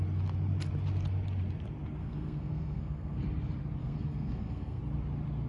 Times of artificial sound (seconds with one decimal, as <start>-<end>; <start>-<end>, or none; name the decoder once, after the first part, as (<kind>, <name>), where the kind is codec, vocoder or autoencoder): 2.0-3.2 (codec, SNAC); 3.8-4.8